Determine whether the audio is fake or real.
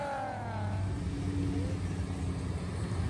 real